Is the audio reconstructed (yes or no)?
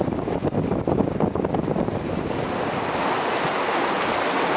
no